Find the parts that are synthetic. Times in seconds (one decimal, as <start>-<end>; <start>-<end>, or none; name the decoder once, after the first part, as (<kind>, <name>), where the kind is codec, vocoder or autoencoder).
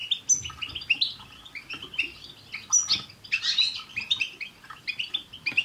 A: 3.9-4.5 (vocoder, BigVGAN v2)